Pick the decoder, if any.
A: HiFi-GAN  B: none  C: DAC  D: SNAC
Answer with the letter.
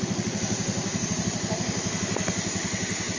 B